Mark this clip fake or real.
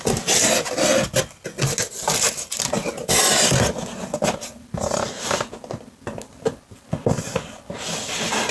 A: real